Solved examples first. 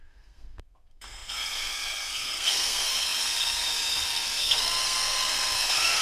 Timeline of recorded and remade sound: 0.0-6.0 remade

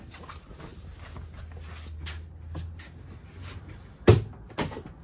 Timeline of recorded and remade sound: 0.0-5.0 recorded